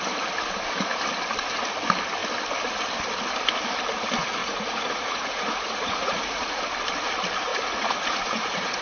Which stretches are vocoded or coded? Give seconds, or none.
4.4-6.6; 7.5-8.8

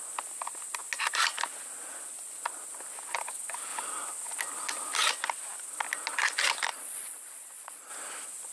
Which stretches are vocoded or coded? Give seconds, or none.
6.7-7.9

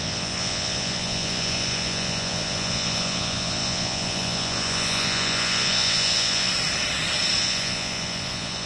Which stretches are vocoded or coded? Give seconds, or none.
0.0-6.5; 7.4-8.7

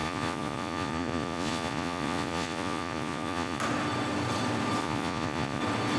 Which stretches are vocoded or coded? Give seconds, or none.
0.0-3.6; 4.8-5.6

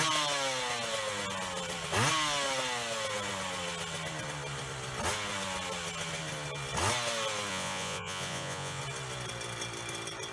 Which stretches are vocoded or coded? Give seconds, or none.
7.5-8.8